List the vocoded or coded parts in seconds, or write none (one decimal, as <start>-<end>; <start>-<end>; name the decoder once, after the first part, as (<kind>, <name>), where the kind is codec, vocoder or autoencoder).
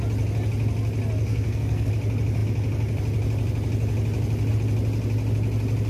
1.3-1.9 (codec, SNAC)